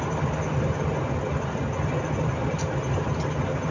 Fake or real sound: real